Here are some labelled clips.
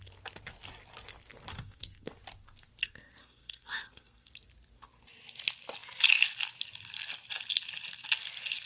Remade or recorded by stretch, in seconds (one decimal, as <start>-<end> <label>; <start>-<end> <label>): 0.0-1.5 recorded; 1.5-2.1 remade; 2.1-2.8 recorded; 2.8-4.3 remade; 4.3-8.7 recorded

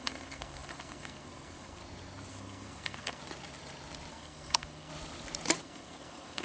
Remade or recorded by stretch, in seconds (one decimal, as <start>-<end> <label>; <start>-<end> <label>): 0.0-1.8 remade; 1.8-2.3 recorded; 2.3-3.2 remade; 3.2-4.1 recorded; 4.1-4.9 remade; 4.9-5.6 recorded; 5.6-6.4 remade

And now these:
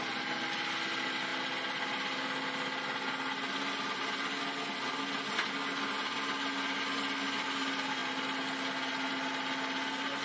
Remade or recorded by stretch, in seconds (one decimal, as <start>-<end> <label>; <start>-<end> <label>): 0.0-10.2 recorded

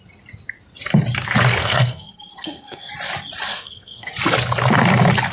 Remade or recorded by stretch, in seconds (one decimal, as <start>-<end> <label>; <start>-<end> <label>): 0.0-1.6 recorded; 1.6-2.9 remade; 2.9-3.5 recorded; 3.5-4.1 remade; 4.1-5.3 recorded

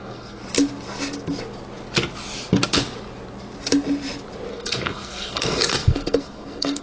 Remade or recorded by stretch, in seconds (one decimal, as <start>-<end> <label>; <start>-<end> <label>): 0.0-0.4 remade; 0.4-4.5 recorded; 4.5-6.8 remade